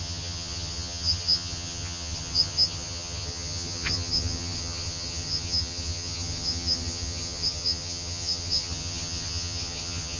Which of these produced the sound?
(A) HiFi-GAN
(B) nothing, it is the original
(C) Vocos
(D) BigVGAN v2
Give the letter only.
A